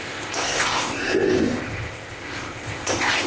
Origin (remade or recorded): remade